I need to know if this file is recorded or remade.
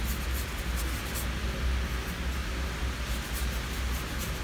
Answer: recorded